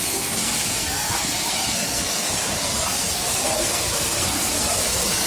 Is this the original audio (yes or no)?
no